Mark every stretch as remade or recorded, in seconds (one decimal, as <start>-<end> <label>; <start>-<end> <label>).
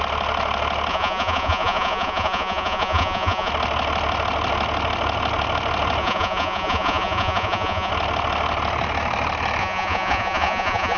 0.0-0.9 recorded; 0.9-3.5 remade; 3.5-6.0 recorded; 6.0-7.9 remade; 7.9-9.6 recorded; 9.6-11.0 remade